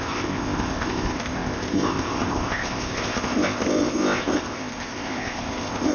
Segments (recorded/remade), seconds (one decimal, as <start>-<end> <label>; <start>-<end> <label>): 0.0-5.9 remade